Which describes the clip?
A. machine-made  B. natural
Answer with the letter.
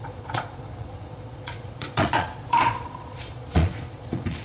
A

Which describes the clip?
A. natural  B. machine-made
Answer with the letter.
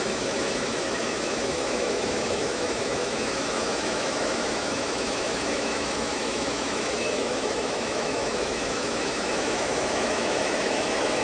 B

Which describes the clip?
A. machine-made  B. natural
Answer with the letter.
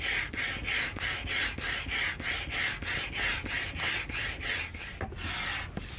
B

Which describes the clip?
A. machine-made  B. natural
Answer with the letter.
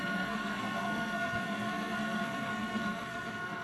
A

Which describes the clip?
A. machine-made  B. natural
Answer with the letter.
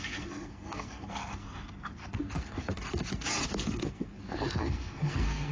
A